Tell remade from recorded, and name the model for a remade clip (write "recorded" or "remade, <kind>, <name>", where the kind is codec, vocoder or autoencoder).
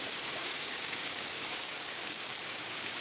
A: remade, codec, DAC